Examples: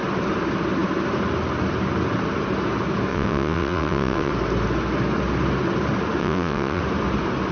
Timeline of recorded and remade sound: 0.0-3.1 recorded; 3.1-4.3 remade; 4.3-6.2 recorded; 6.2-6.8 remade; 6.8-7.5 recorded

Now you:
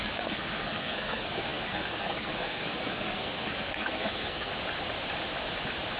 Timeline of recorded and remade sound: 0.0-4.5 remade; 4.5-6.0 recorded